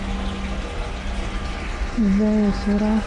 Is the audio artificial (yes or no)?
no